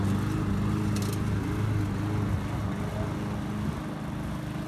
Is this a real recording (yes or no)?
yes